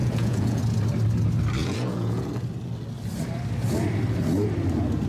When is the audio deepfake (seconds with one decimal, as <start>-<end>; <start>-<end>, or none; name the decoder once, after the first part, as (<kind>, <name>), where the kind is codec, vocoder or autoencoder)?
0.0-0.6 (vocoder, Vocos); 1.6-2.3